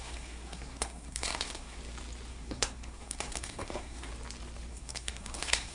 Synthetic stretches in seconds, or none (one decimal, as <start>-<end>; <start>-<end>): 0.0-1.8; 2.3-4.1; 4.7-5.7